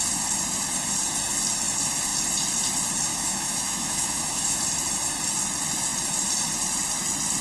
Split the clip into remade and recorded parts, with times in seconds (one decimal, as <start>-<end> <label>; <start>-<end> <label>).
0.0-3.1 recorded; 3.1-4.6 remade; 4.6-7.4 recorded